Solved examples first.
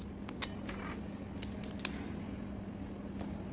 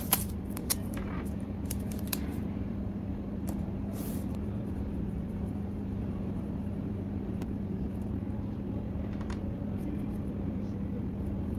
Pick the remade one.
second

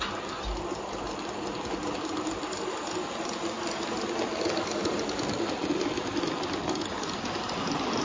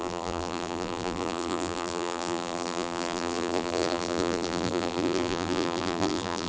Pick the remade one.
second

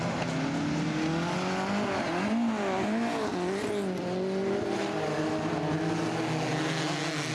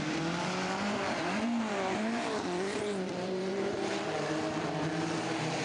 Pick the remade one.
second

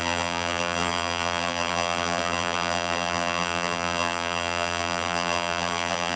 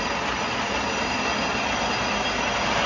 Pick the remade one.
first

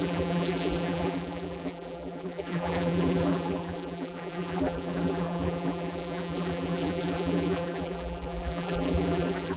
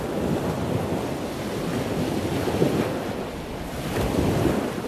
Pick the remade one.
first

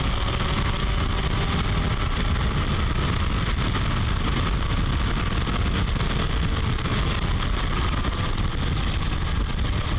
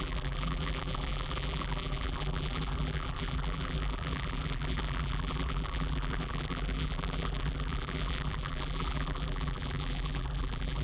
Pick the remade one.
second